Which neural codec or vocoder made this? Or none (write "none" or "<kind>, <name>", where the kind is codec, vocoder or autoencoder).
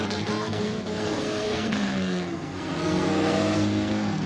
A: codec, SNAC